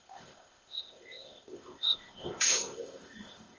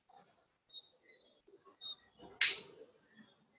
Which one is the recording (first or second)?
second